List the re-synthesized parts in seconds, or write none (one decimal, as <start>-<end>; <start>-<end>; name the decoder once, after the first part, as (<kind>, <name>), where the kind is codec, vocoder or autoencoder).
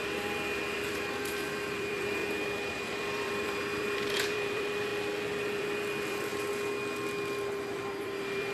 0.0-2.2 (vocoder, BigVGAN v2); 2.7-4.9; 5.6-6.3; 7.6-8.5